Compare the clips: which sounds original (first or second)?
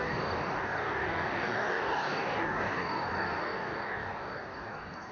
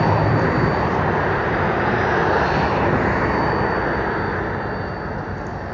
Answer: second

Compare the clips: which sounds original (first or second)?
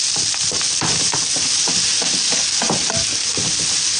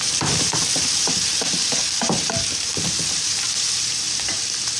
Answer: first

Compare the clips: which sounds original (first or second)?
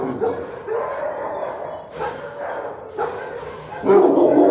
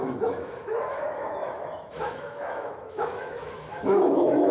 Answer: first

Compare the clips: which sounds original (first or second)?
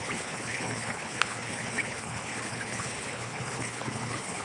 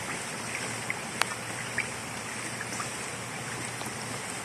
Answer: second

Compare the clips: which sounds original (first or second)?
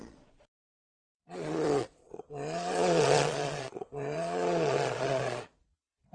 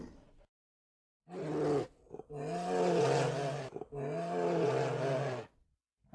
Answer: second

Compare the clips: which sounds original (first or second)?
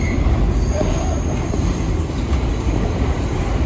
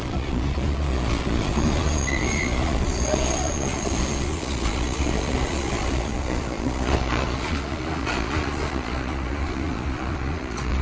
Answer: first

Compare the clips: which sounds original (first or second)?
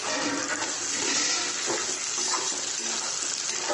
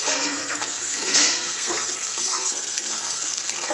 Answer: first